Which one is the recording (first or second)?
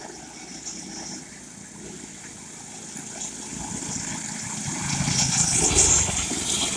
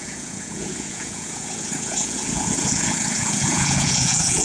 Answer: first